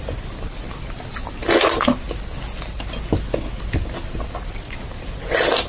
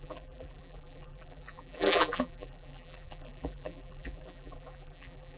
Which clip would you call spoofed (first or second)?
second